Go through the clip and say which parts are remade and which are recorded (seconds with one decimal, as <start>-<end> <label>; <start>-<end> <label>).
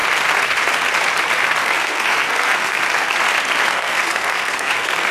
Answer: 0.0-1.6 recorded; 1.6-2.8 remade; 2.8-3.7 recorded; 3.7-5.1 remade